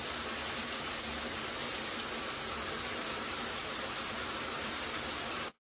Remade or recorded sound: recorded